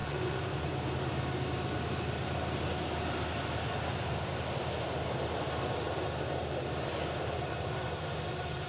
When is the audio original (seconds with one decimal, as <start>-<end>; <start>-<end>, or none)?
0.7-8.7